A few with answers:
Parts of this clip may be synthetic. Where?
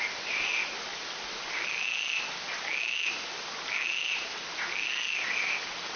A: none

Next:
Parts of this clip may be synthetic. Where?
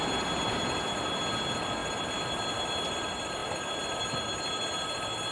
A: none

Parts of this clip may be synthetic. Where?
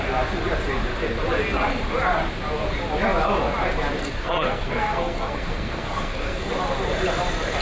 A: 4.0-6.5 (codec, SNAC)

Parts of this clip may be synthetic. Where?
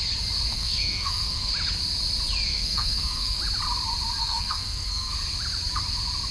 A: 0.5-1.5 (codec, SNAC); 2.5-3.4; 4.2-5.1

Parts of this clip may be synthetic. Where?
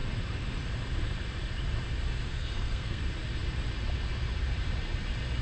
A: 2.3-3.0 (codec, SNAC)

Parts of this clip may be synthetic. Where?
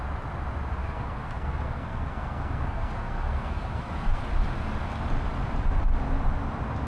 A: 0.8-4.2 (codec, SNAC)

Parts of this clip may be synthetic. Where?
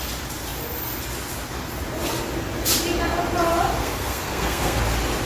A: 3.8-4.8 (codec, SNAC)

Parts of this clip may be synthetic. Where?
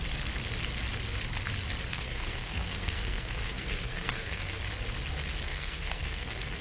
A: 1.9-4.6 (codec, SNAC); 5.5-6.6